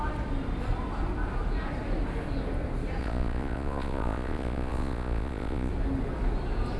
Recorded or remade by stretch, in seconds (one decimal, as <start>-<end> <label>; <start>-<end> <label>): 0.0-3.0 recorded; 3.0-5.7 remade; 5.7-6.8 recorded